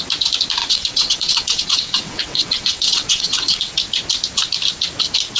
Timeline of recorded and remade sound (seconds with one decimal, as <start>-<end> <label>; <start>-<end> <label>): 0.0-0.6 recorded; 0.6-3.8 remade; 3.8-5.4 recorded